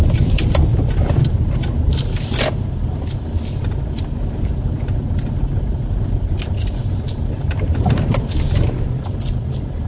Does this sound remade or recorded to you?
recorded